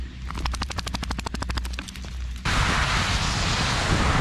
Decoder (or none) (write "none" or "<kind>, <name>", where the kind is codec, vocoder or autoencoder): none